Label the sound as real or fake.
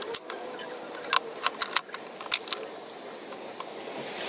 real